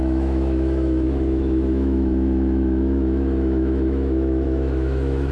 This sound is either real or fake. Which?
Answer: fake